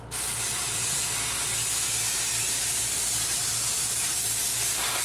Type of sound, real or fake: real